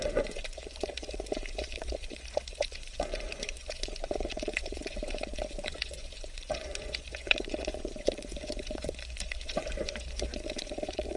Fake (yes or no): yes